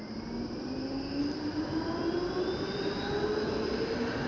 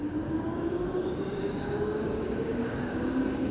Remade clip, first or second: second